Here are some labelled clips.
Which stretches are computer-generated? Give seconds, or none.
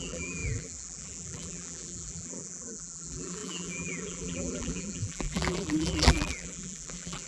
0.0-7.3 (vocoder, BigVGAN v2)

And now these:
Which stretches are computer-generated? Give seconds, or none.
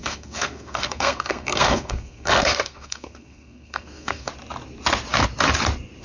0.0-4.3 (codec, SNAC)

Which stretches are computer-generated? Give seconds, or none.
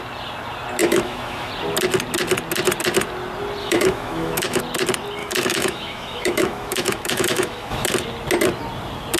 0.8-1.5 (autoencoder, DAC-VAE); 3.6-4.6; 5.2-7.9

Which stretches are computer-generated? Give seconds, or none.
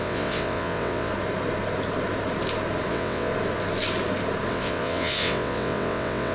0.0-1.1 (vocoder, WaveNeXt); 2.9-3.3; 4.5-6.3